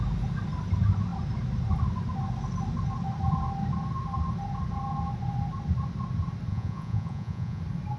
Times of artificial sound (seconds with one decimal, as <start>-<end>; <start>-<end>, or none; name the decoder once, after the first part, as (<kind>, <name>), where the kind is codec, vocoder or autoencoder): 6.5-7.6 (vocoder, Vocos)